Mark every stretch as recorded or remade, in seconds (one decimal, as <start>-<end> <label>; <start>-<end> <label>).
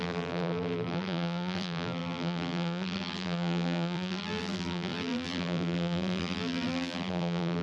0.0-7.6 remade